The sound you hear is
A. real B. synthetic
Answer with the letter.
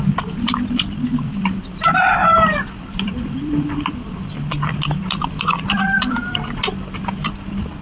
B